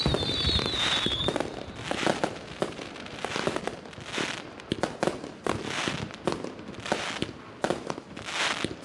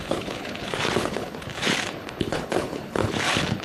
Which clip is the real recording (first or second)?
first